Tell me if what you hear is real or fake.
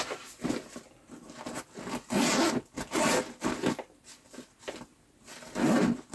real